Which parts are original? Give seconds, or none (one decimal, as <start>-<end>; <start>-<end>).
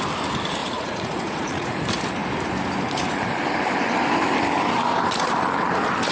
0.0-0.6; 1.8-6.1